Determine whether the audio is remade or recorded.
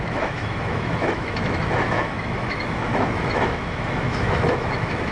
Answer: remade